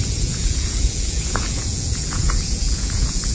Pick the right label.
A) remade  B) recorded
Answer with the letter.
A